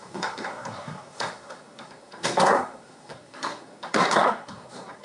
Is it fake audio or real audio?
fake